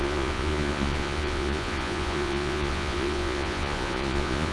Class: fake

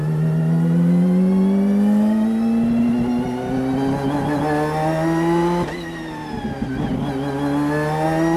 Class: real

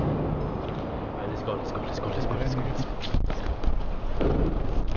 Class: real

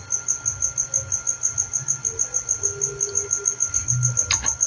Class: real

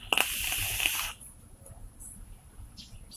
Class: real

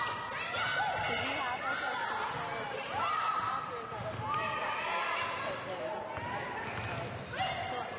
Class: real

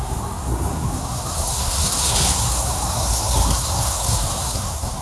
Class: fake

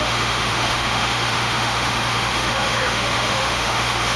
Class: fake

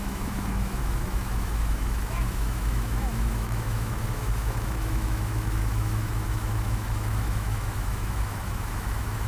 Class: fake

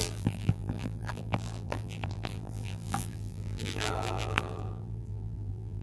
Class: fake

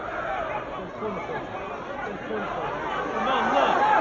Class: real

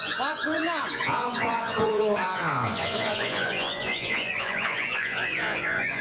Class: fake